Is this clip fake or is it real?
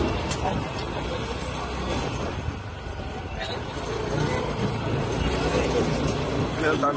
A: real